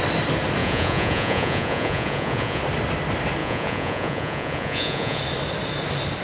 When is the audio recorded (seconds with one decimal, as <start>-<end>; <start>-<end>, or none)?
0.0-0.6; 2.6-3.4; 5.2-6.2